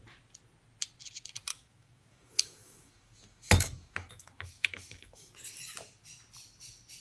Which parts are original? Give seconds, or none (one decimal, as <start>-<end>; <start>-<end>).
0.0-1.5; 5.3-7.0